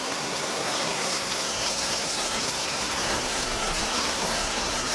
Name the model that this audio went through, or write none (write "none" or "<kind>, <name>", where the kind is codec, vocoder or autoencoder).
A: codec, SNAC